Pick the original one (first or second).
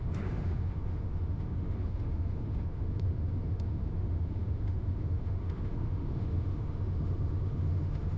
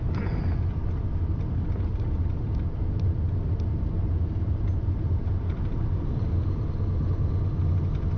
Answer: second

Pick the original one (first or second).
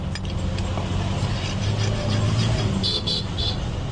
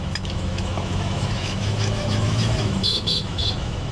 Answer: first